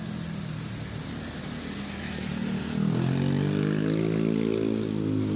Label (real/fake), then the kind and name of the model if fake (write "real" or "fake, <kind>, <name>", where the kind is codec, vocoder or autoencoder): real